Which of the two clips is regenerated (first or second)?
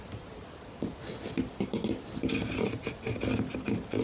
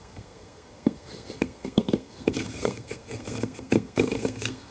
second